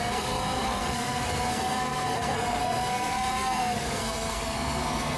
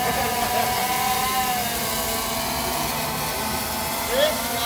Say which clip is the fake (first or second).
first